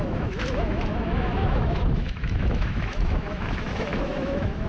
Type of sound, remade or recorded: remade